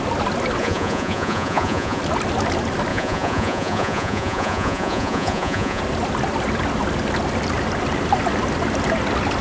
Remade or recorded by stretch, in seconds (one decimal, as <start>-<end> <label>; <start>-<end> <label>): 0.0-0.6 recorded; 0.6-2.0 remade; 2.0-2.9 recorded; 2.9-5.8 remade; 5.8-9.4 recorded